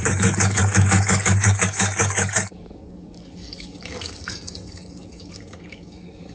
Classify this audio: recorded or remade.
remade